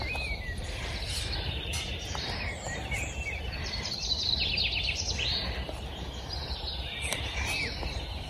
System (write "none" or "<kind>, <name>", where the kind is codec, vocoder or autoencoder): vocoder, BigVGAN v2